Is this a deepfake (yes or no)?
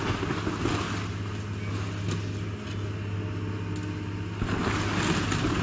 no